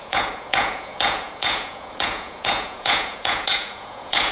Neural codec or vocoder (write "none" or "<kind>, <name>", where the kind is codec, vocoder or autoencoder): vocoder, Vocos